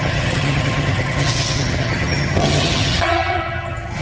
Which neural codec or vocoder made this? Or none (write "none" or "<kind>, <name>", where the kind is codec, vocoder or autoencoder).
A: vocoder, HiFi-GAN